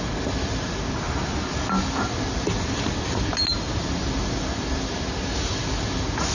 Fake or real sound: real